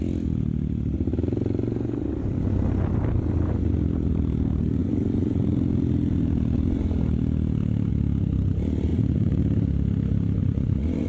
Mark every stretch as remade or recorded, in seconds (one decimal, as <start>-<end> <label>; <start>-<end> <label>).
0.0-8.9 recorded; 8.9-9.4 remade; 9.4-10.4 recorded; 10.4-11.1 remade